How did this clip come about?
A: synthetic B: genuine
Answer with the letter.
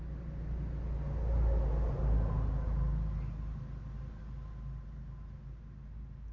B